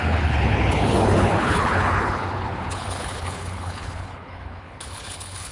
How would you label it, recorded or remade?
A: remade